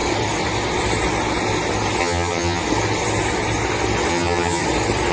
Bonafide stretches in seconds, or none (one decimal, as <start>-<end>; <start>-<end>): 0.0-2.0; 2.6-4.1; 4.6-5.1